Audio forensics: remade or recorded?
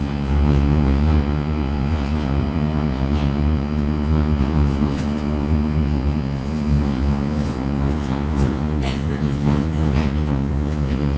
remade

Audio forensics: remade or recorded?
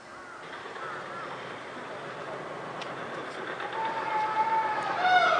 recorded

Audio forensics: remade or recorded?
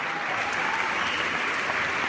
recorded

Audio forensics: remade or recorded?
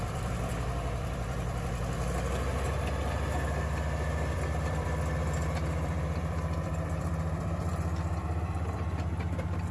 remade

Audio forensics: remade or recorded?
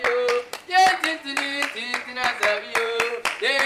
remade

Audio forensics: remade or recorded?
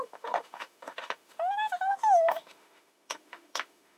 remade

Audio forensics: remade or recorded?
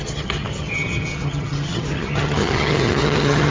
remade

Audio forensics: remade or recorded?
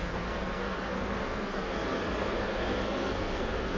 remade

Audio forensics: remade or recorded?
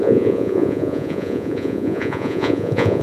remade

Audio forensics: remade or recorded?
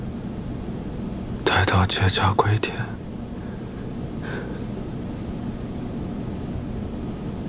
recorded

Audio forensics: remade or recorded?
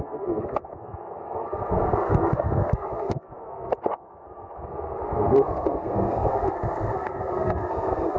remade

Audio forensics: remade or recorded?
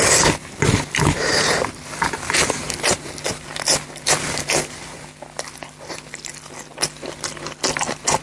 recorded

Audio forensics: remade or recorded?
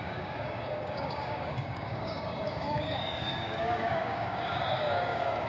remade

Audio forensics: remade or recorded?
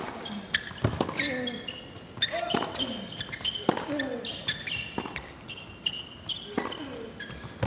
recorded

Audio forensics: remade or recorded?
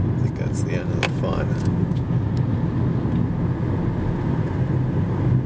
recorded